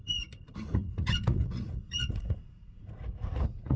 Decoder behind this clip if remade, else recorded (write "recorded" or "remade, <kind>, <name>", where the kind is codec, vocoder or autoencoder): remade, vocoder, Vocos